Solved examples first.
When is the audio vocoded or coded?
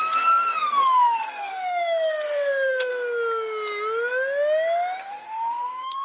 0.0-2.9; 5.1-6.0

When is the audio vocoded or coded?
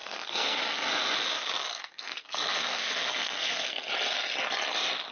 0.0-0.6; 1.7-3.9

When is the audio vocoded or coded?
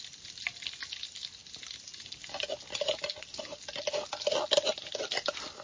none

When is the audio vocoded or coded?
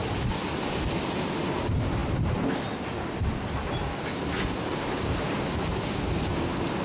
none